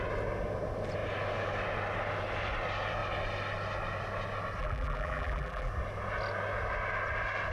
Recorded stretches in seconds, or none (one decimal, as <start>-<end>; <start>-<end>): 0.0-4.6; 5.7-7.5